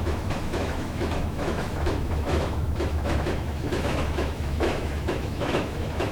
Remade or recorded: remade